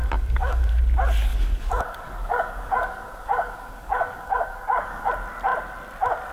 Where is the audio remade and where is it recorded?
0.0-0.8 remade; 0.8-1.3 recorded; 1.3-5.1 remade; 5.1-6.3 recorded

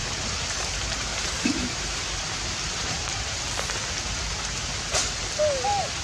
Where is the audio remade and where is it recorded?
0.0-3.6 remade; 3.6-6.0 recorded

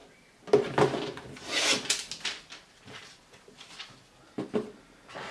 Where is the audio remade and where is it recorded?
0.0-5.3 recorded

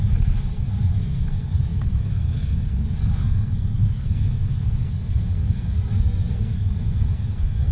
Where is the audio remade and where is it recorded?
0.0-7.7 remade

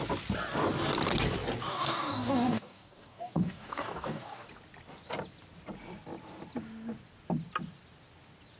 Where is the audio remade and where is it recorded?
0.0-1.7 recorded; 1.7-4.5 remade; 4.5-8.6 recorded

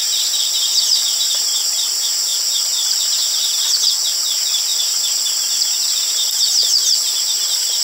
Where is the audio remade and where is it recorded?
0.0-7.8 recorded

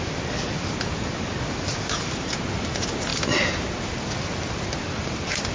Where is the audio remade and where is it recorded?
0.0-5.5 recorded